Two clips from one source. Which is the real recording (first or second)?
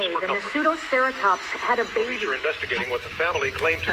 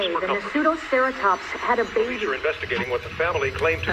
second